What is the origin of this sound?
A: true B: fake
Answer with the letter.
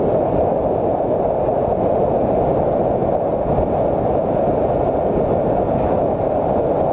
A